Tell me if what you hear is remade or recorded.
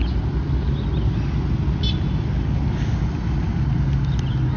recorded